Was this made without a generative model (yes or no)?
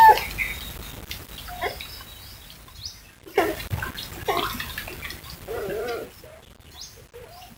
yes